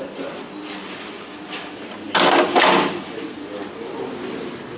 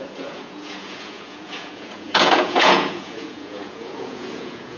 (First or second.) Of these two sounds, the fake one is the second